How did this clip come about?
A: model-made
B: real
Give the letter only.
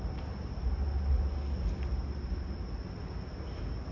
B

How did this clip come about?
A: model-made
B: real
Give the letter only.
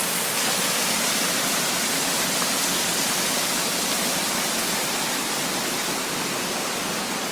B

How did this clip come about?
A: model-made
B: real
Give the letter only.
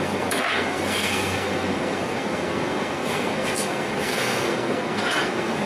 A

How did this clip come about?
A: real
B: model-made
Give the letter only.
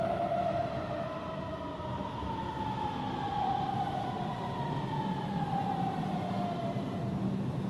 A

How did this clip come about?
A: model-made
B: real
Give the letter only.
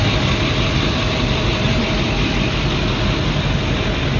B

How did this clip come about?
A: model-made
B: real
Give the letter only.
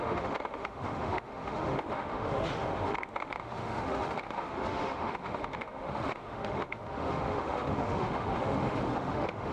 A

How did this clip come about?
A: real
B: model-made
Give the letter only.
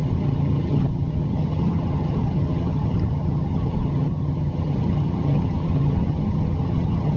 B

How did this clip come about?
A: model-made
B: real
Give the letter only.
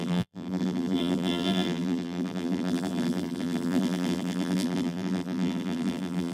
A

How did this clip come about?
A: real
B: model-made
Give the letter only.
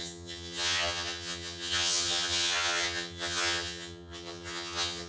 B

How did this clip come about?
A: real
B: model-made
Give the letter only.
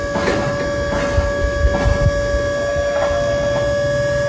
A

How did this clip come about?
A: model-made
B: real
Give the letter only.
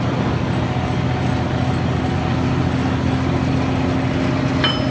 B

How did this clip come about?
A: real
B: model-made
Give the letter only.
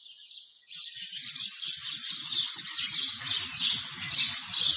A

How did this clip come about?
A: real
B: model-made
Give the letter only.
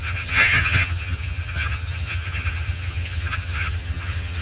B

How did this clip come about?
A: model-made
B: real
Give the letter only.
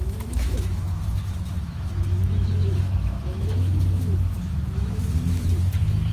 A